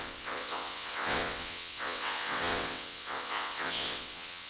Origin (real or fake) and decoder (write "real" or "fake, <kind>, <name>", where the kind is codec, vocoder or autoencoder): fake, vocoder, WaveNeXt